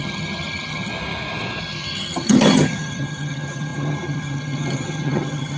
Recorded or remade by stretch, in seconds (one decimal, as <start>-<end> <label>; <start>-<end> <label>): 0.0-0.9 remade; 0.9-1.6 recorded; 1.6-5.6 remade

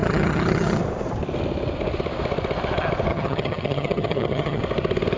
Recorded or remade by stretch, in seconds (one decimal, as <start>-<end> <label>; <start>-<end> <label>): 0.0-0.8 remade; 0.8-3.1 recorded; 3.1-4.6 remade; 4.6-5.2 recorded

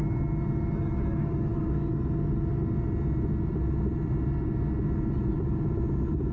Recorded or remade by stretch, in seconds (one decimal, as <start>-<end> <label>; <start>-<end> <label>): 0.0-6.3 recorded